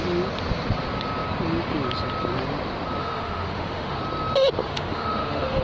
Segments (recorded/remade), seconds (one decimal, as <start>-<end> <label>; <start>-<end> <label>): 0.0-3.0 recorded; 3.0-4.0 remade; 4.0-4.6 recorded; 4.6-5.6 remade